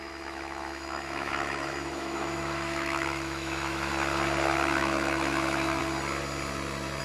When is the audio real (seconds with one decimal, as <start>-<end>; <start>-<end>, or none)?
3.9-4.8; 5.8-7.0